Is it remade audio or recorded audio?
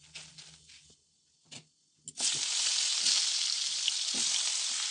recorded